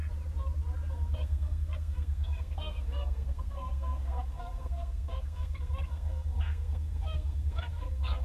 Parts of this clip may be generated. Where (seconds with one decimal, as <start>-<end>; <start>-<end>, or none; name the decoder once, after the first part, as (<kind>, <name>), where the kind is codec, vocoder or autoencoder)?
0.9-8.2 (codec, SNAC)